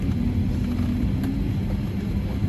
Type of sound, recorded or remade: recorded